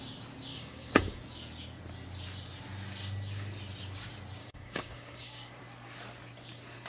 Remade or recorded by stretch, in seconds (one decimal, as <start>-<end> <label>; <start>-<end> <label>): 0.0-0.5 recorded; 0.5-1.2 remade; 1.2-4.4 recorded; 4.4-5.6 remade; 5.6-6.9 recorded